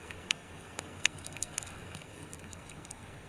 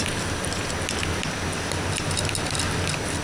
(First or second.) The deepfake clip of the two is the first